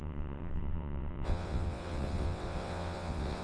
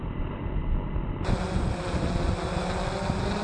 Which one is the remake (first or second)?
first